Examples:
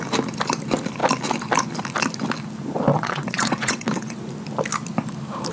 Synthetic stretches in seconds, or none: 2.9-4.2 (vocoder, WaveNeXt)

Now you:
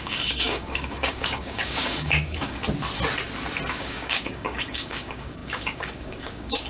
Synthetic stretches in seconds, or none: 0.0-2.6 (codec, DAC); 3.7-6.7

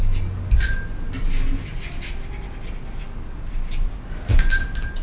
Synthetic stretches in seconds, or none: none